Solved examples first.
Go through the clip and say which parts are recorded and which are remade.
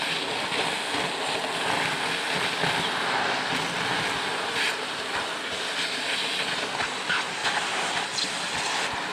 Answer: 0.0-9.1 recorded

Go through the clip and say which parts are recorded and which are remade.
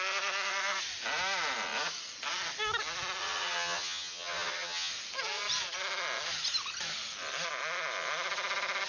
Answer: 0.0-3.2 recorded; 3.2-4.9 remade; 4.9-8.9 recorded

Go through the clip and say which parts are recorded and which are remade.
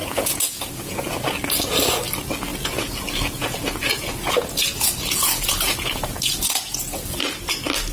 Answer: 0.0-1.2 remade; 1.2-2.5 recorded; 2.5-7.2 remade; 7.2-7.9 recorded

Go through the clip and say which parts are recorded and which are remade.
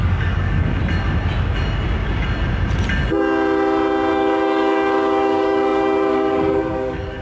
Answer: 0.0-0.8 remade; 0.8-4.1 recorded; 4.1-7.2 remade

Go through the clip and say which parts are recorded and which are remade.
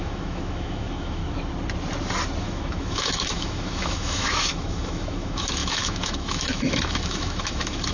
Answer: 0.0-1.2 remade; 1.2-2.4 recorded; 2.4-7.9 remade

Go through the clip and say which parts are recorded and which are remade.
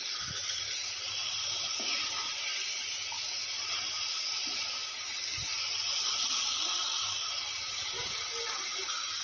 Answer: 0.0-9.2 recorded